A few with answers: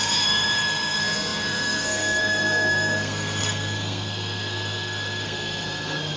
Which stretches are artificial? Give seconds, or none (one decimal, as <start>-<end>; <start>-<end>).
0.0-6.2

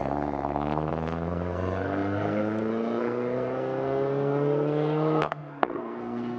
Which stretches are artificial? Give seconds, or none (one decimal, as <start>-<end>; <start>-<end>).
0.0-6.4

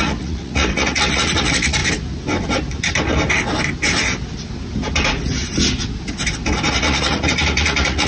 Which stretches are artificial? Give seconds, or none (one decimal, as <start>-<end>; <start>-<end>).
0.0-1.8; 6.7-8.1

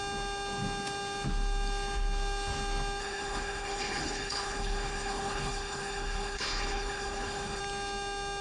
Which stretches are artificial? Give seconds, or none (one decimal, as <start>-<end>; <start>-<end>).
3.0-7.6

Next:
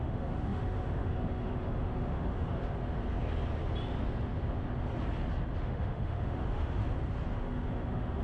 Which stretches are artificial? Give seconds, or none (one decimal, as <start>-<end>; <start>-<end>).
0.0-2.6; 5.6-6.8; 7.4-8.2

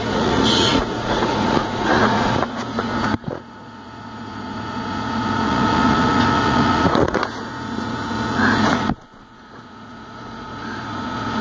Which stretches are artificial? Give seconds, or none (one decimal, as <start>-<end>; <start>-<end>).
0.0-11.4

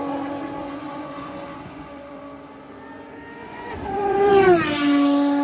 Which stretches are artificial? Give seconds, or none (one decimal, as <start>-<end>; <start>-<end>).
0.6-2.2; 3.4-4.3